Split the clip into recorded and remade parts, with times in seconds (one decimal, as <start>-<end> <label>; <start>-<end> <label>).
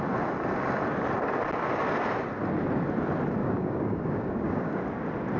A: 0.0-3.4 recorded; 3.4-4.8 remade; 4.8-5.4 recorded